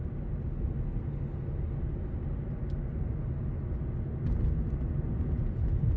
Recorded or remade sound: recorded